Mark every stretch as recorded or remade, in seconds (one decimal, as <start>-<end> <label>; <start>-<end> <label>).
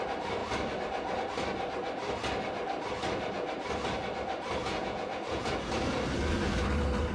0.0-4.6 recorded; 4.6-5.5 remade; 5.5-7.1 recorded